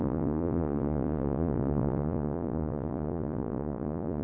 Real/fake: fake